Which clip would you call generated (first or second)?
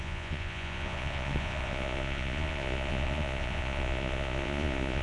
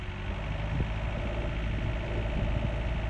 first